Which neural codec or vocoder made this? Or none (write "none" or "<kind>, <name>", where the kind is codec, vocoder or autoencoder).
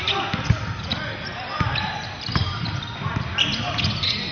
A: none